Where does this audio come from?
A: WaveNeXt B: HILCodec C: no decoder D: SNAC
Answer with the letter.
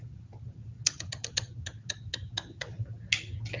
C